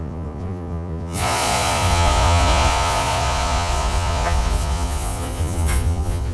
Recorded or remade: remade